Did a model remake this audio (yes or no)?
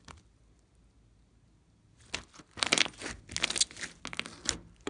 no